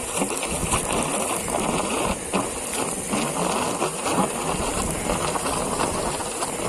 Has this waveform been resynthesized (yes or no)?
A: no